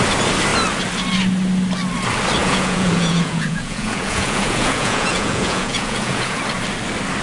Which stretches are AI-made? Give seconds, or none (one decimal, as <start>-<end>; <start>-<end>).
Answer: 2.4-6.4